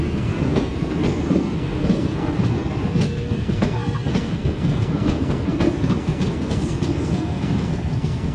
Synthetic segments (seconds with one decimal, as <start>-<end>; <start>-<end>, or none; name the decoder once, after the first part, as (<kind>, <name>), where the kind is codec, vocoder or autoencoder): 0.0-8.3 (codec, SNAC)